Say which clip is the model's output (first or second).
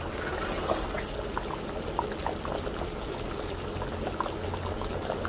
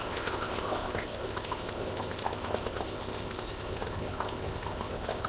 second